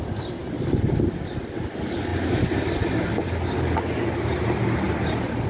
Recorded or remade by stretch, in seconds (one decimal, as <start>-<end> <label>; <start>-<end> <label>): 0.0-2.1 remade; 2.1-5.5 recorded